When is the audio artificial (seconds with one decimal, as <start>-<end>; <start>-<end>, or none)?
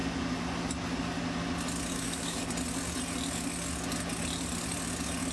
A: 1.9-2.4